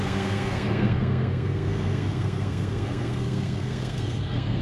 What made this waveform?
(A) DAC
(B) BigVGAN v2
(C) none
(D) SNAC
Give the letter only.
D